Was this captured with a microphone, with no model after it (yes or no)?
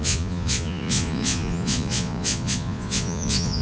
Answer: no